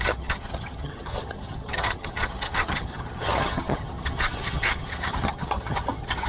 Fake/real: fake